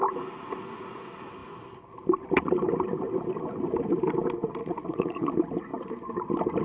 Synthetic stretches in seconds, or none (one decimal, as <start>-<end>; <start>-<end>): 4.6-5.3

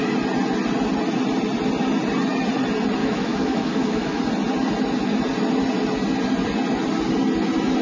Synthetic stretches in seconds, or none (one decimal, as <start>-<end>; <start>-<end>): 3.0-4.2

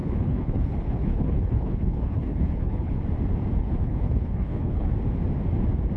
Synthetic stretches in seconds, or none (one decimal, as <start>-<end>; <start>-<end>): 0.0-3.0; 3.6-4.9

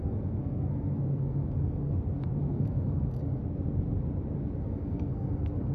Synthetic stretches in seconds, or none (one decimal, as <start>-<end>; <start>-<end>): 0.0-1.9; 2.5-3.4; 4.6-5.7

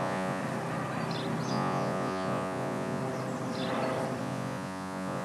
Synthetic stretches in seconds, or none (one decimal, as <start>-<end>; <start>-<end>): 0.0-0.4; 1.5-3.0; 4.2-5.2